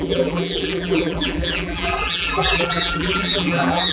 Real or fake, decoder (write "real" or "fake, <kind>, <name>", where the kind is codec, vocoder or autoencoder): fake, vocoder, BigVGAN v2